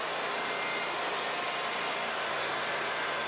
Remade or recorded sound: recorded